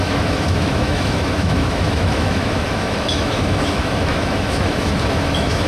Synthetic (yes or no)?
yes